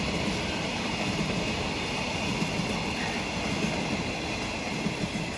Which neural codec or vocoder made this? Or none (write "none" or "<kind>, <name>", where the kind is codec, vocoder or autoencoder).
none